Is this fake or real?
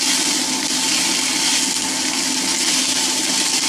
real